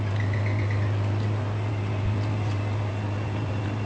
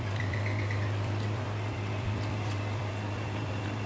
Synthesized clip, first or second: second